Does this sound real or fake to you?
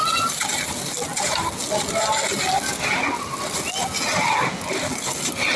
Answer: real